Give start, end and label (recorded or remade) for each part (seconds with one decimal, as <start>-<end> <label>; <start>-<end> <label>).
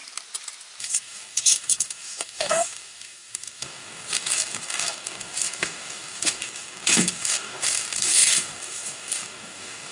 0.0-0.8 recorded; 0.8-9.9 remade